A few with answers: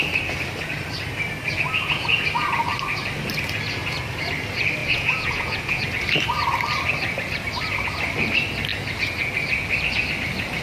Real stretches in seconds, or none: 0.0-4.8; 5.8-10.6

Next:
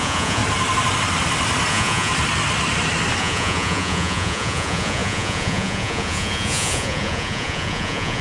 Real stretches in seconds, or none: 0.4-1.7; 2.1-3.2

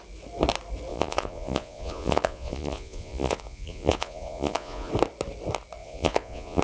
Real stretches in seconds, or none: 0.0-0.9; 4.9-5.8

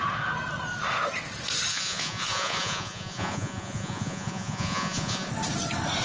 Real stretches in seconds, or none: 0.0-1.7; 5.3-6.0